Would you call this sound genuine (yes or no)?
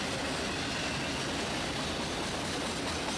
yes